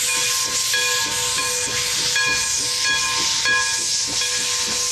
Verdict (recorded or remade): recorded